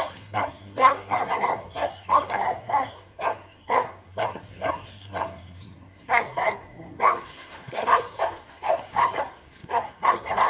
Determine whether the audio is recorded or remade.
remade